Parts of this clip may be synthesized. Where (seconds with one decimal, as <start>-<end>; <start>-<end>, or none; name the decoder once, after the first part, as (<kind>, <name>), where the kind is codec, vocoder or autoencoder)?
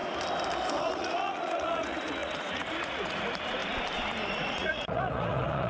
0.8-3.6 (vocoder, Vocos); 4.3-5.7